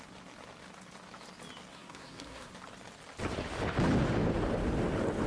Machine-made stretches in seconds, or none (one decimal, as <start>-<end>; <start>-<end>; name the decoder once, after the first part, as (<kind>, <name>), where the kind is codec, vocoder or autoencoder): 1.7-2.5 (codec, SNAC)